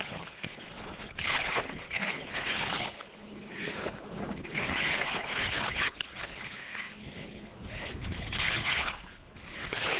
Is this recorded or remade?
remade